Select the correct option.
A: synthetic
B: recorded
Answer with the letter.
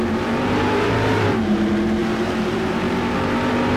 A